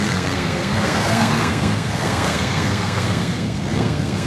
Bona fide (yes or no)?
no